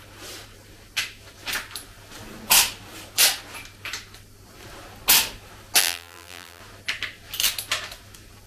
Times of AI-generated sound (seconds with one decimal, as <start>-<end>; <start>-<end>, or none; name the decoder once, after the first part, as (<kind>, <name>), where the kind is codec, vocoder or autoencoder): 5.8-6.6 (vocoder, BigVGAN v2)